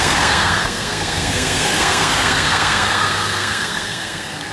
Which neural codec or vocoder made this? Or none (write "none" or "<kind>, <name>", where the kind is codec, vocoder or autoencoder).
codec, SNAC